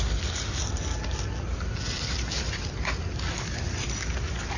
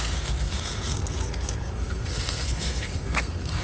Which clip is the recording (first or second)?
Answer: first